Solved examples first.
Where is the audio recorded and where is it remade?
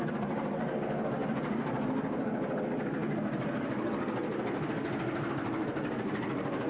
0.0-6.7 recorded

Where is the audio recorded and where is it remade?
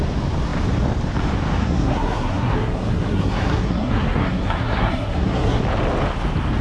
0.0-1.6 recorded; 1.6-5.6 remade; 5.6-6.6 recorded